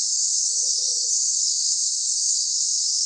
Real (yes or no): no